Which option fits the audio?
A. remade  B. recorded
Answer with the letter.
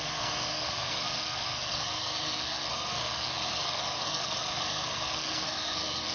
A